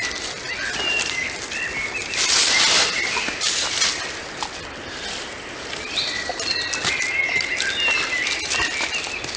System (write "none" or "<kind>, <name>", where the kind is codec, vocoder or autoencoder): none